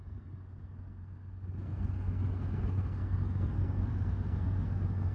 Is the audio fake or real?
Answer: fake